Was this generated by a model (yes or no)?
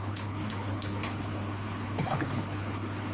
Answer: yes